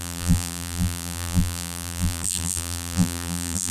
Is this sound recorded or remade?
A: remade